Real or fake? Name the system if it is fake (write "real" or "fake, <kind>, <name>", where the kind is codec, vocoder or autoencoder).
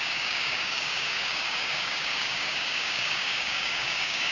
fake, codec, DAC